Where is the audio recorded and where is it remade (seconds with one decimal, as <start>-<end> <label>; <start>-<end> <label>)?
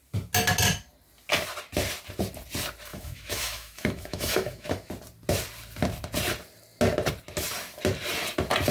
0.0-2.9 recorded; 2.9-4.9 remade; 4.9-8.7 recorded